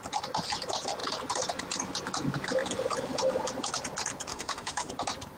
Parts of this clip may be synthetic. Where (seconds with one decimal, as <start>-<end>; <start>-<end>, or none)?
4.3-4.9